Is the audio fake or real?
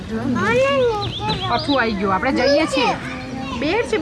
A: real